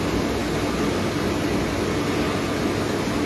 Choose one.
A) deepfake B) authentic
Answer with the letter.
B